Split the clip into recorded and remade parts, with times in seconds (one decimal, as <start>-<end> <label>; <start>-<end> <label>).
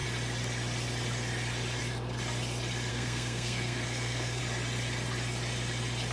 0.0-2.9 recorded; 2.9-4.4 remade; 4.4-6.1 recorded